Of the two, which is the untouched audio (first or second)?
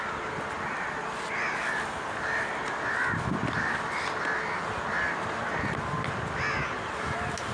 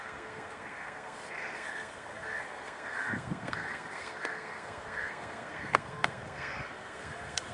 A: first